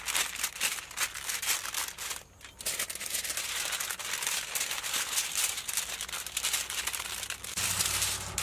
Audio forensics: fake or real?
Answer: real